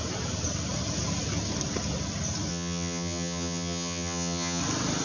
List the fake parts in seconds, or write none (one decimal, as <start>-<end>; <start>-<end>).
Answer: 2.5-4.6